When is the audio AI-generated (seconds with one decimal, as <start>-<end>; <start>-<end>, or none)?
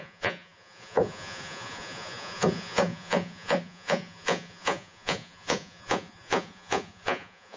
0.0-7.6